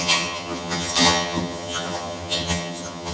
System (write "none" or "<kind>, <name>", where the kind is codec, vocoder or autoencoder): vocoder, HiFi-GAN